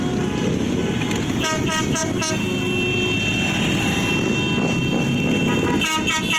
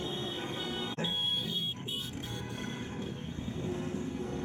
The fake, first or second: second